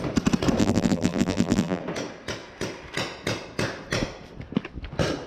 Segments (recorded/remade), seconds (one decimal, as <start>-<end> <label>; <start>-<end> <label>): 0.0-0.6 recorded; 0.6-1.8 remade; 1.8-5.3 recorded